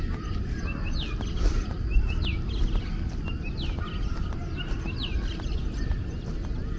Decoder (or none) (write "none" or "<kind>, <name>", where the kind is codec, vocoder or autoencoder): none